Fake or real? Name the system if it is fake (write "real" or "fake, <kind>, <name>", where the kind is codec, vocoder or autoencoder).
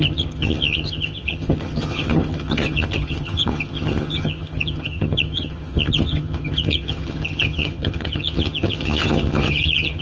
fake, vocoder, HiFi-GAN